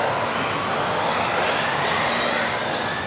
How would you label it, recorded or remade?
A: recorded